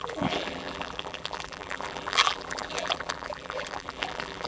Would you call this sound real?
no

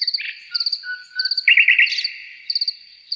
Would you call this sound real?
yes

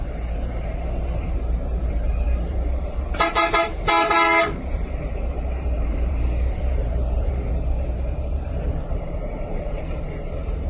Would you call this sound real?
no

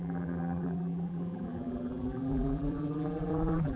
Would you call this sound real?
no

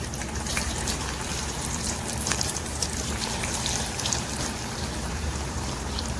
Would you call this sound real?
no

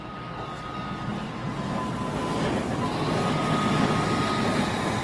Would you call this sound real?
yes